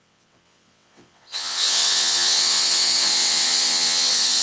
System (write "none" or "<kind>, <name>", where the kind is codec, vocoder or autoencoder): vocoder, WaveNeXt